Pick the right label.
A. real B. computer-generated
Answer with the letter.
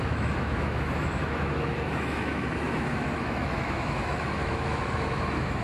B